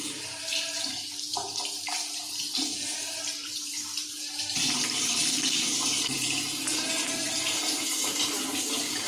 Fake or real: fake